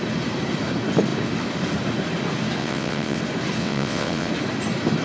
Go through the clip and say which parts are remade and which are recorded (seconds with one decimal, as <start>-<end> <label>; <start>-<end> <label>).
0.0-2.6 recorded; 2.6-3.2 remade; 3.2-3.6 recorded; 3.6-4.3 remade; 4.3-5.0 recorded